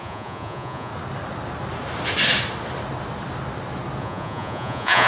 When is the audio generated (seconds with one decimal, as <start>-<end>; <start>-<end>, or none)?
0.0-0.9; 4.0-5.1